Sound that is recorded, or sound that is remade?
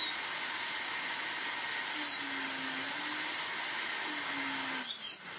recorded